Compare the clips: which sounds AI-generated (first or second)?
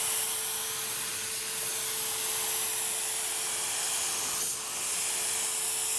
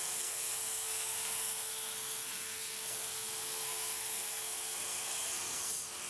second